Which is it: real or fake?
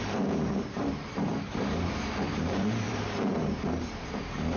fake